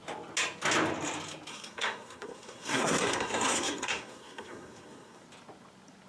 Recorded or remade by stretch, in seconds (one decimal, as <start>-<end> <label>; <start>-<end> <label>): 0.0-1.5 recorded; 1.5-5.2 remade; 5.2-6.1 recorded